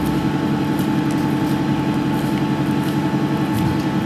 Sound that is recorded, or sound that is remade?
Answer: recorded